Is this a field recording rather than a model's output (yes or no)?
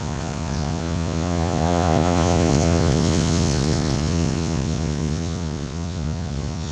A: no